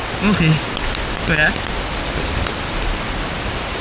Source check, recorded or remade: recorded